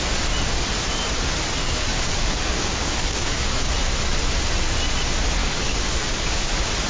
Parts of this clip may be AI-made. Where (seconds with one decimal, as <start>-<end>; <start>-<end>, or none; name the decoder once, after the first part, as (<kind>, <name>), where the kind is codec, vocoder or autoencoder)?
1.6-3.7 (codec, DAC); 5.4-6.5